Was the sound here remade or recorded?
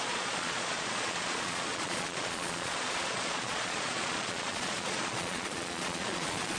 remade